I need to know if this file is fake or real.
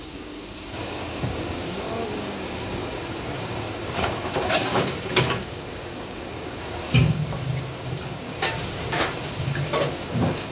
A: fake